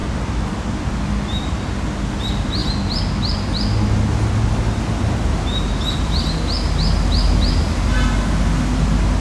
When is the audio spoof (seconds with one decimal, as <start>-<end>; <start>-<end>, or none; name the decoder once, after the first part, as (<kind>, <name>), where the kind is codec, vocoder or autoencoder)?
none